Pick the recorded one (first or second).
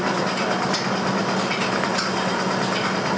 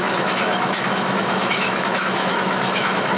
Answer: first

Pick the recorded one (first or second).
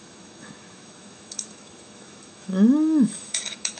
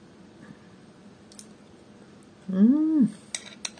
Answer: second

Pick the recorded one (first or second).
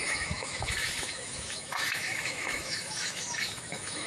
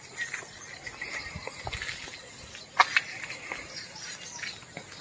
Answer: second